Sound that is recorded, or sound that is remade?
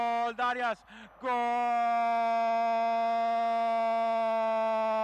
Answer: recorded